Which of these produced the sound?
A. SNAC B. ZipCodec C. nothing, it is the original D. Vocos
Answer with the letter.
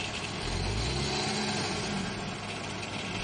C